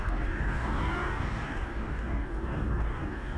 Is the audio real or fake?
fake